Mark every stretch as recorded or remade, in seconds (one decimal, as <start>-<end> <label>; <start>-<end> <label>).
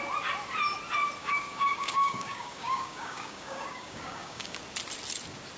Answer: 0.0-1.2 recorded; 1.2-4.6 remade; 4.6-5.6 recorded